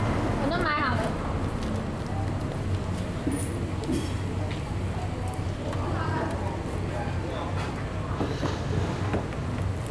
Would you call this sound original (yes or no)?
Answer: yes